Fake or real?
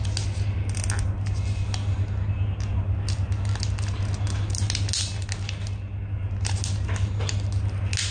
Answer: real